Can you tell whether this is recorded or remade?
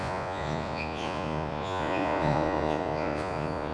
remade